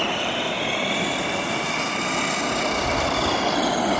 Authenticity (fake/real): real